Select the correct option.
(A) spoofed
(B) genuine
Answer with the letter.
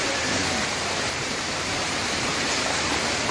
A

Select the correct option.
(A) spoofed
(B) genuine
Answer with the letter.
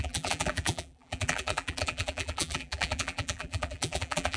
A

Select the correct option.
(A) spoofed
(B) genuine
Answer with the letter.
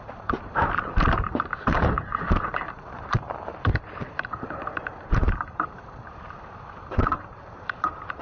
A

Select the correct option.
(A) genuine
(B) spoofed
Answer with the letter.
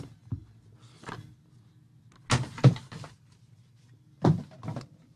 A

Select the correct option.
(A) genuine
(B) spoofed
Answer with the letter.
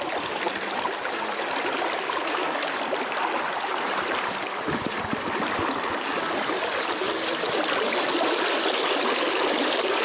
A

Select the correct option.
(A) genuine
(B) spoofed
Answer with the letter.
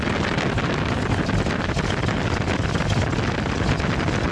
A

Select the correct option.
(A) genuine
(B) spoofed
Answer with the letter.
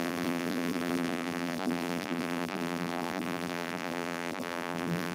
B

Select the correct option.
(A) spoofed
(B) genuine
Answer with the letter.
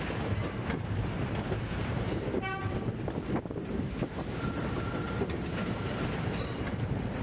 A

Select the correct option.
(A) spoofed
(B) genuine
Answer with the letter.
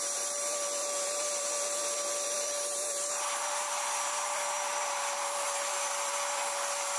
A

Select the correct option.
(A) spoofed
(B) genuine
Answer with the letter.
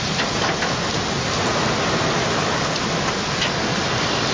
B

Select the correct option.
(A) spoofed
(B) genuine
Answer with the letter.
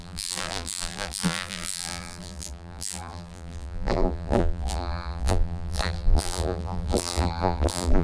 A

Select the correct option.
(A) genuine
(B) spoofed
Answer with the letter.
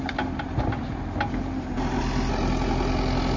A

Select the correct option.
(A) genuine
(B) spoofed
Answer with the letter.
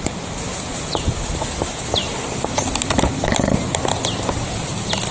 A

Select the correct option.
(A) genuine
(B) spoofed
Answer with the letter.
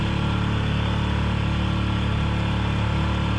A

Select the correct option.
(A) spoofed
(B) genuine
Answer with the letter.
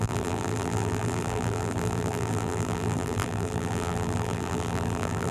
A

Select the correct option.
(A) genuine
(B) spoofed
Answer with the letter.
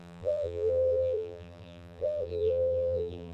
B